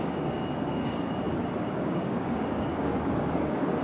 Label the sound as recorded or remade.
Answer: remade